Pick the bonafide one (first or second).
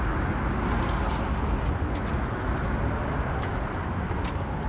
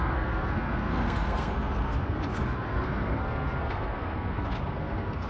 first